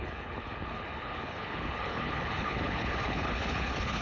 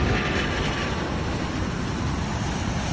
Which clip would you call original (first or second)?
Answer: second